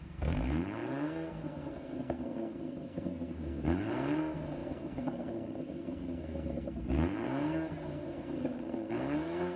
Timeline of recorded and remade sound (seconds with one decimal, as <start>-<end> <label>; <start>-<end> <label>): 0.0-9.6 remade